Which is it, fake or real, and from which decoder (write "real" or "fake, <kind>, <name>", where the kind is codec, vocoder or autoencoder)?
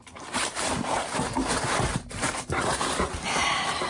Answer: fake, vocoder, BigVGAN v2